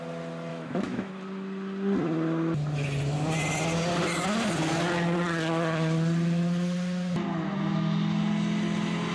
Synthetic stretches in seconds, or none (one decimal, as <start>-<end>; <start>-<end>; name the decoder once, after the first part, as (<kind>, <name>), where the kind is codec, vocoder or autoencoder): 0.5-1.1 (autoencoder, DAC-VAE)